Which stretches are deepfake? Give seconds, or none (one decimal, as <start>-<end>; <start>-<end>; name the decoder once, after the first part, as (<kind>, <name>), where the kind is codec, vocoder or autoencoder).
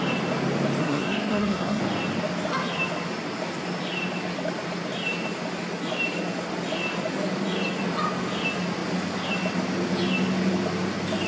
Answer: 0.8-1.8 (codec, SNAC)